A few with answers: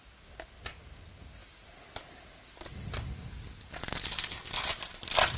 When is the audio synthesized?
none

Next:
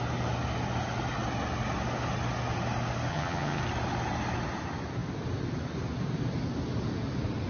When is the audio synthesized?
3.1-3.6 (vocoder, HiFi-GAN)

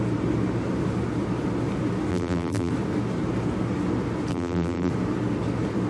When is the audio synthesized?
2.1-2.7 (vocoder, BigVGAN v2); 4.3-4.9

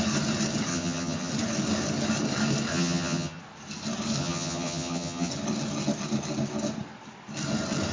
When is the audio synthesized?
0.7-1.3 (vocoder, HiFi-GAN); 2.7-3.4; 4.2-5.3

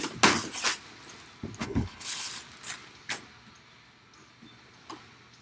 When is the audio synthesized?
1.6-2.3 (codec, HILCodec)

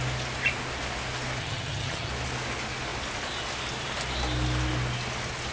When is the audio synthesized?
1.4-2.1 (vocoder, HiFi-GAN)